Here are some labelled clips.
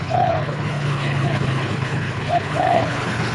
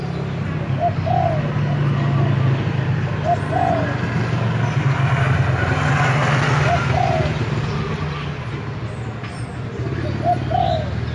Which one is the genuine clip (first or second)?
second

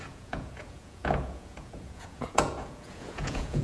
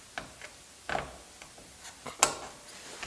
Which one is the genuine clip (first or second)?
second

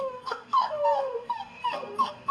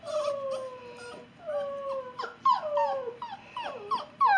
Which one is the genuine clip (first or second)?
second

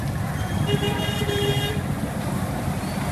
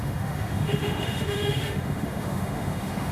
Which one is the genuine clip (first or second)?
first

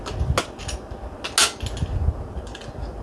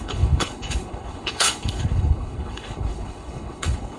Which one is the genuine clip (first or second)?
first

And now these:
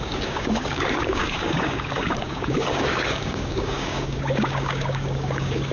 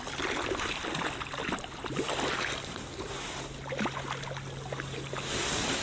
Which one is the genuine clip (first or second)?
second